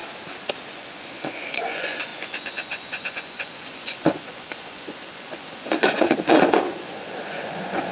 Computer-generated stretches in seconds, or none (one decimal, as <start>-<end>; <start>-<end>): 0.7-7.9